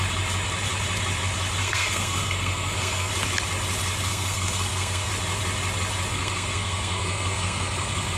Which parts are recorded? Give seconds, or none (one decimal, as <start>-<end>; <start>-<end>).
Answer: 0.0-1.6; 3.1-4.1; 5.1-6.1